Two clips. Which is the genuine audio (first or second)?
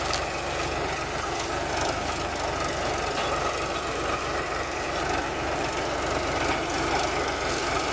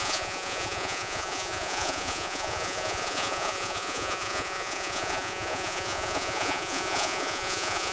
first